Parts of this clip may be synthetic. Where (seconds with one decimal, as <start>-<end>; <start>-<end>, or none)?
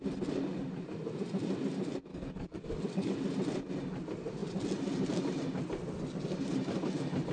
2.1-3.1